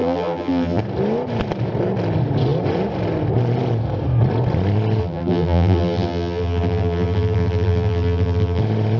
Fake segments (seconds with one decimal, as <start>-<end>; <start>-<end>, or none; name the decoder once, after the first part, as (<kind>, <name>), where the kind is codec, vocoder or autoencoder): 0.0-0.8 (vocoder, BigVGAN v2); 5.0-8.6